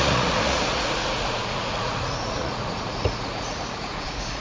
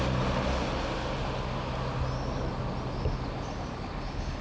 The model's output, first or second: first